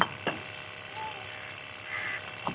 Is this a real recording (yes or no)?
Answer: no